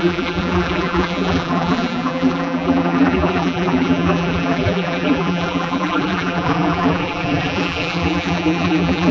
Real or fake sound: fake